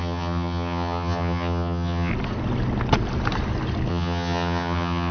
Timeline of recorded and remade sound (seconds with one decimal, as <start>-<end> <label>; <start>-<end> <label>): 0.0-2.1 remade; 2.1-3.9 recorded; 3.9-5.1 remade